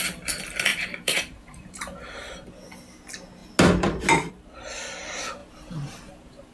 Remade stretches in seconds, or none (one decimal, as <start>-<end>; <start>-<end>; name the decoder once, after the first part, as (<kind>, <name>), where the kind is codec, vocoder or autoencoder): 0.7-2.5 (vocoder, BigVGAN v2)